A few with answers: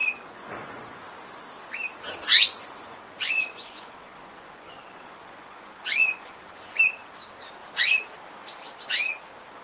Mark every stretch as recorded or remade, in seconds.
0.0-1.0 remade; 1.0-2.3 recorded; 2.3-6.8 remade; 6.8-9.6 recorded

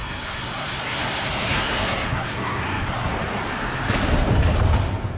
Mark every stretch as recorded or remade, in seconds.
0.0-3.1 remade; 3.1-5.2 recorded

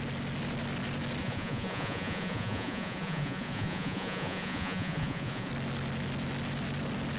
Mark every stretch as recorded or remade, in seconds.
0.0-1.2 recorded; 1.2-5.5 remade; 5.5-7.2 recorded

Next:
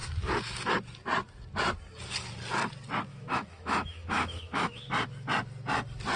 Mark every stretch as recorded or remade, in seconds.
0.0-3.1 recorded; 3.1-4.9 remade; 4.9-6.2 recorded

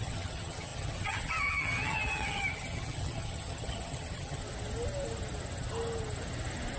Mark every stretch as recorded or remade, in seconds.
0.0-4.4 remade; 4.4-6.8 recorded

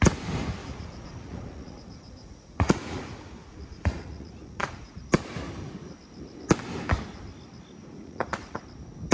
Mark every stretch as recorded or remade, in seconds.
0.0-0.6 recorded; 0.6-5.0 remade; 5.0-7.8 recorded; 7.8-8.6 remade; 8.6-9.1 recorded

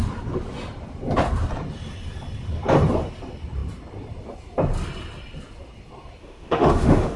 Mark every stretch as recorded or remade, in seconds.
0.0-6.2 recorded; 6.2-7.2 remade